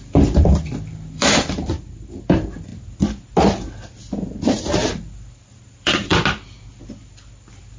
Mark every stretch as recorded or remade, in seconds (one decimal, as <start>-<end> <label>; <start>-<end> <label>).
0.0-2.7 remade; 2.7-4.9 recorded; 4.9-6.1 remade; 6.1-7.0 recorded; 7.0-7.8 remade